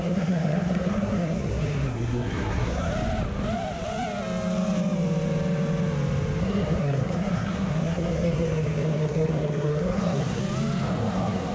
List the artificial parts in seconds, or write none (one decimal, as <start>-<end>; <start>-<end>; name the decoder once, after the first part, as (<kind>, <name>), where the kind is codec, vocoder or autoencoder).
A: 0.0-2.9 (codec, SNAC); 6.4-10.4; 11.0-11.5

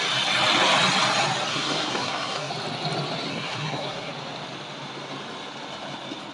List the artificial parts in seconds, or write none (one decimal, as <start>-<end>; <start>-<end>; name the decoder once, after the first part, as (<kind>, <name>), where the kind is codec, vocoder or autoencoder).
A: 1.5-2.5 (codec, SNAC); 3.3-4.1

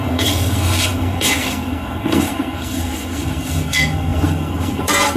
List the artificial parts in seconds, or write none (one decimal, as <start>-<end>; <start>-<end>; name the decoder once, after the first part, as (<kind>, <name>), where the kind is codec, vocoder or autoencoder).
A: 0.0-5.2 (codec, SNAC)

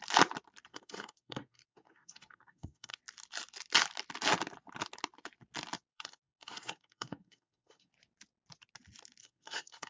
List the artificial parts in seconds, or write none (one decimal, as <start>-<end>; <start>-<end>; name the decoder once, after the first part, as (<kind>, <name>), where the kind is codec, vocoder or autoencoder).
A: 0.7-3.0 (codec, SNAC); 5.9-7.9; 9.2-9.9

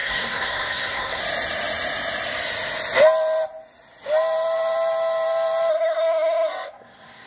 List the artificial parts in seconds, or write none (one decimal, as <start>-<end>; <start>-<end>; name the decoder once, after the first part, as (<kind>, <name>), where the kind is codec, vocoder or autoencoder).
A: 0.0-1.2 (codec, SNAC); 5.7-7.3

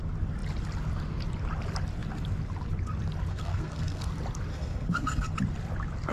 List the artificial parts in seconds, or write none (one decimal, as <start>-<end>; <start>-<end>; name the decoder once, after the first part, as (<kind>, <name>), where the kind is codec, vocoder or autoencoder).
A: 3.3-4.1 (codec, SNAC); 4.5-5.3